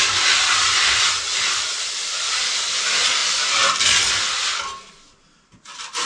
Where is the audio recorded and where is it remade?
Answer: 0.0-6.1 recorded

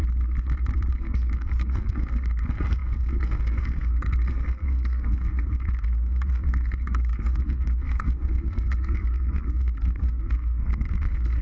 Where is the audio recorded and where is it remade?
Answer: 0.0-0.9 recorded; 0.9-11.4 remade

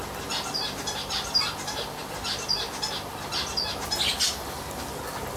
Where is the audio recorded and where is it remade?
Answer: 0.0-5.4 recorded

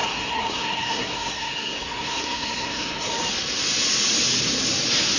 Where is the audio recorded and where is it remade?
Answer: 0.0-3.1 remade; 3.1-5.2 recorded

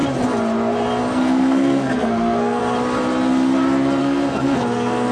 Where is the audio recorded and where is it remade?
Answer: 0.0-1.1 recorded; 1.1-2.6 remade; 2.6-4.0 recorded; 4.0-5.1 remade

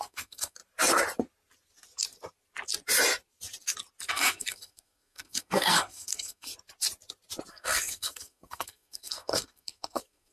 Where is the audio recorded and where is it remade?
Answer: 0.0-0.6 remade; 0.6-4.1 recorded; 4.1-6.5 remade; 6.5-7.5 recorded; 7.5-10.3 remade